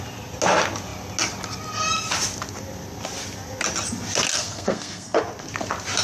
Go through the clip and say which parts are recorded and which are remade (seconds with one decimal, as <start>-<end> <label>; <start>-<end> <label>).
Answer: 0.0-4.3 recorded; 4.3-5.2 remade; 5.2-6.0 recorded